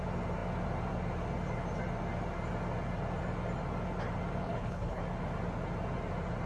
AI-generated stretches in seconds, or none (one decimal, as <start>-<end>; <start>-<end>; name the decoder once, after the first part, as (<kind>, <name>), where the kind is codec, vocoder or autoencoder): 4.4-5.0 (codec, HILCodec)